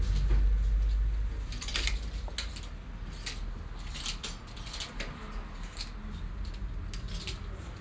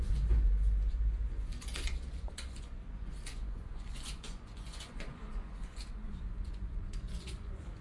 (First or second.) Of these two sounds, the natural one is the first